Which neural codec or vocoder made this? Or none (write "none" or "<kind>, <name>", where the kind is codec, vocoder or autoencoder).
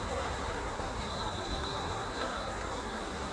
codec, SNAC